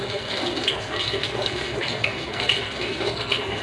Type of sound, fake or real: fake